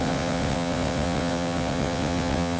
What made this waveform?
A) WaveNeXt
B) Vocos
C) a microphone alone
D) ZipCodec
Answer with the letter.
A